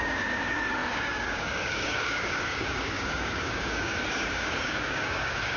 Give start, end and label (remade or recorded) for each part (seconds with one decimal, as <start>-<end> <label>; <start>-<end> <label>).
0.0-5.6 remade